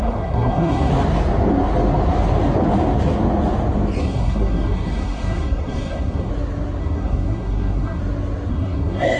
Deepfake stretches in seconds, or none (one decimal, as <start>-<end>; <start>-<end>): 0.0-0.9; 4.0-6.3; 6.8-8.0; 8.5-9.2